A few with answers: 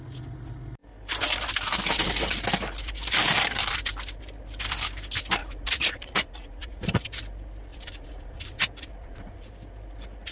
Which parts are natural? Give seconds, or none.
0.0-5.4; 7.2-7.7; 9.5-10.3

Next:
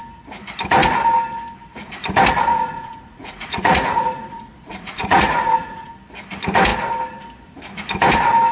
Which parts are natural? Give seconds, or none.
0.0-2.5; 5.9-8.5

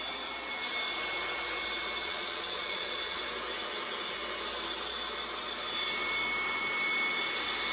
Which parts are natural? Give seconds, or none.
0.0-2.0; 3.2-7.7

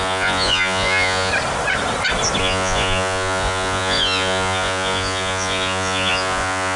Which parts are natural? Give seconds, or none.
1.3-2.4